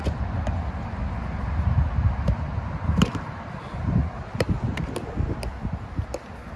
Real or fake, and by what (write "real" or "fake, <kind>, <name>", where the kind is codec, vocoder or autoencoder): real